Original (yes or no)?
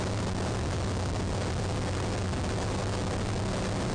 yes